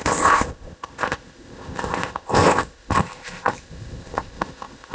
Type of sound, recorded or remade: remade